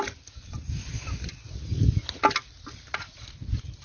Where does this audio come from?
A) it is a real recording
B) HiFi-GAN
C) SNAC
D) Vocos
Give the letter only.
A